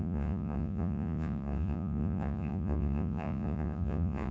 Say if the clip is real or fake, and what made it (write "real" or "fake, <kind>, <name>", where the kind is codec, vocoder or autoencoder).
fake, vocoder, Vocos